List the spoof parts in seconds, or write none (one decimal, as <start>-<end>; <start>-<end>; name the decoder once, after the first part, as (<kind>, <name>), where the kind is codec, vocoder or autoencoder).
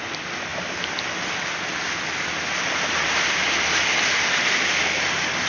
none